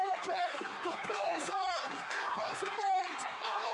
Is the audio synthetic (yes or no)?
yes